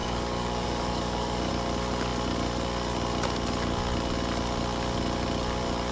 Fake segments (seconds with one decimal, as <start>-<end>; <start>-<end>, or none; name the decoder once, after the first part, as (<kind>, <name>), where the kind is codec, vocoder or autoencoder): 0.0-1.5 (codec, DAC)